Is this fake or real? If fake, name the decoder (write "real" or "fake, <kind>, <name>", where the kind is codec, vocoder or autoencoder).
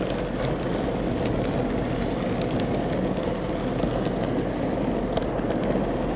real